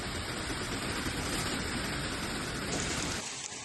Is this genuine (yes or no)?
yes